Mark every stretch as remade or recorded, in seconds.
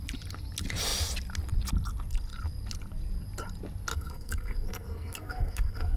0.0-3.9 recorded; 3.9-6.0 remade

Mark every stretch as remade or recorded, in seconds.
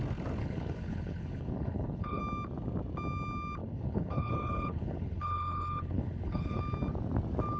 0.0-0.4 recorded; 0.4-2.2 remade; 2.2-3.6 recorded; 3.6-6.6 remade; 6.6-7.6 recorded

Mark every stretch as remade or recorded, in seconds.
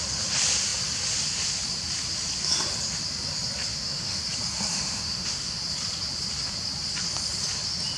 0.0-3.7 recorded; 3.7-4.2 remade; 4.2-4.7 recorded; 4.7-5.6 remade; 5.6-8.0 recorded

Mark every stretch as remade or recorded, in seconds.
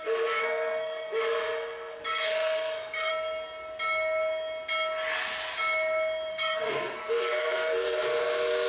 0.0-3.1 remade; 3.1-6.3 recorded; 6.3-8.7 remade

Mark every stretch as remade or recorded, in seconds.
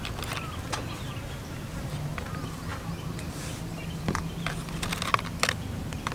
0.0-6.1 recorded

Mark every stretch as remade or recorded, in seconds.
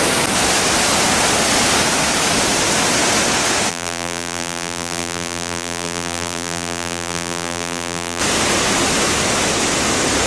0.0-3.7 recorded; 3.7-8.2 remade; 8.2-10.3 recorded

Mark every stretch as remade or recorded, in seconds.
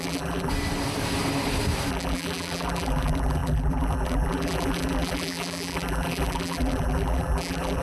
0.0-0.5 remade; 0.5-1.9 recorded; 1.9-7.8 remade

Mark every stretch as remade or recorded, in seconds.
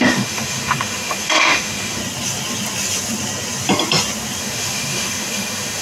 0.0-2.0 remade; 2.0-4.4 recorded; 4.4-5.8 remade